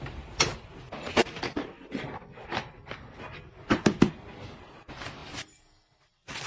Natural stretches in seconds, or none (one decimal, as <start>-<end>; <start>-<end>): 0.0-1.2; 2.2-6.5